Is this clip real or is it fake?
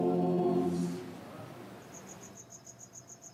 real